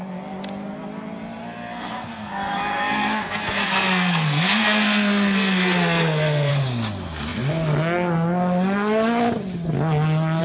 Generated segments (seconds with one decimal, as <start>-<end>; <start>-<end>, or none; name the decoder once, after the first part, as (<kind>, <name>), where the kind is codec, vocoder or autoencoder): 1.4-6.5 (codec, SNAC)